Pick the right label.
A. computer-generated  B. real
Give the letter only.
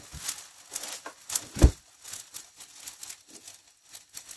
B